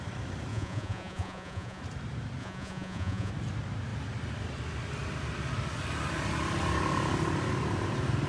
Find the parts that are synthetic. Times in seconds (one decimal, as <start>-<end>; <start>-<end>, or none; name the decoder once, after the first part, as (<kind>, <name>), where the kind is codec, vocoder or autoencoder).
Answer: 0.5-1.8 (vocoder, Vocos); 2.4-3.3